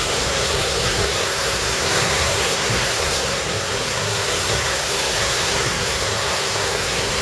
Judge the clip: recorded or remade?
remade